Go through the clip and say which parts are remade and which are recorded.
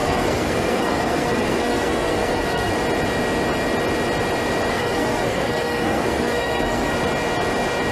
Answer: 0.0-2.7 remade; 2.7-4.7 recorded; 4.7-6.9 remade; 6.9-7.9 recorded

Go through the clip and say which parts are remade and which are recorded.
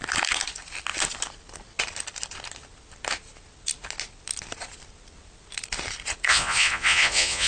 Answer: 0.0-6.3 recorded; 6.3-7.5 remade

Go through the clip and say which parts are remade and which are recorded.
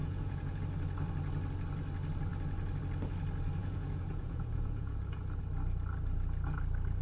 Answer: 0.0-0.6 remade; 0.6-3.6 recorded; 3.6-5.4 remade; 5.4-7.0 recorded